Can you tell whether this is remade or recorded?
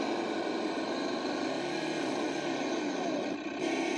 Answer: recorded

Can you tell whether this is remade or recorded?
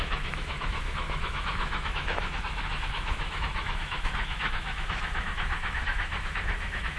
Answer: remade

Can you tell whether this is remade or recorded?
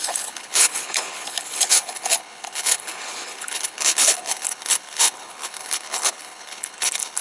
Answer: remade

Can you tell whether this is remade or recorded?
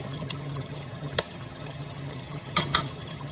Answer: remade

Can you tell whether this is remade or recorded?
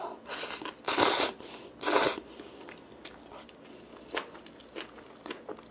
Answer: recorded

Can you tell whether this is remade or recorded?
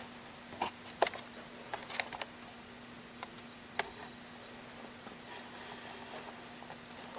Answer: recorded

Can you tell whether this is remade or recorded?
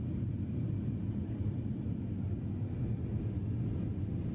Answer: recorded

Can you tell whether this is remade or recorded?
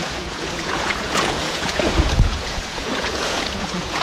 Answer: remade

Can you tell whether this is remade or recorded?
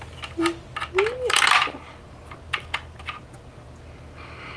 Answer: recorded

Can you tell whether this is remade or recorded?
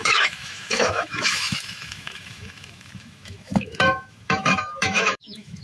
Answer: remade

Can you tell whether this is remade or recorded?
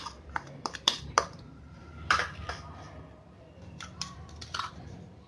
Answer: remade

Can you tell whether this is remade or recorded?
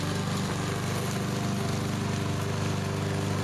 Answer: recorded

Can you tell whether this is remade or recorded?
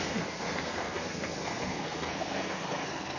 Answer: remade